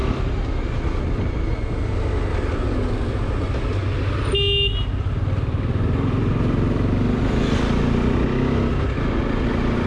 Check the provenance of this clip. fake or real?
real